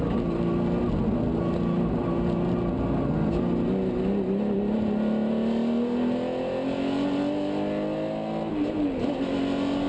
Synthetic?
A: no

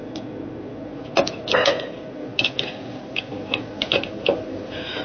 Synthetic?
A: no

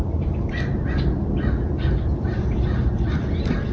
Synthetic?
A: no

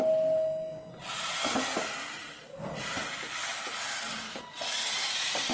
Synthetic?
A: no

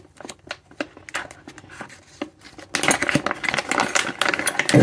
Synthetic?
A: no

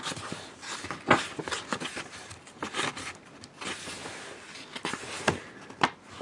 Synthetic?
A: no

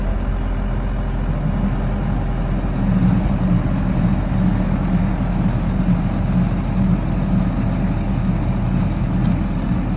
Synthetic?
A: no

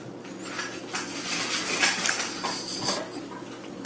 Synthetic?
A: no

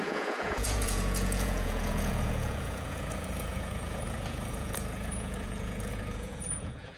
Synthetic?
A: yes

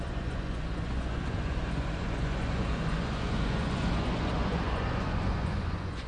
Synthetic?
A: yes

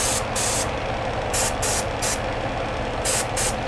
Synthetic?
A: no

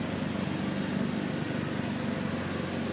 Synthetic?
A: no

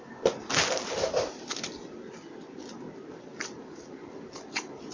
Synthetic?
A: no